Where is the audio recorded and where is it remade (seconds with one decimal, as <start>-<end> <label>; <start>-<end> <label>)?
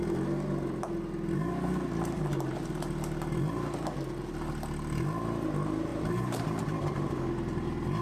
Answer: 0.0-5.9 recorded; 5.9-6.6 remade; 6.6-8.0 recorded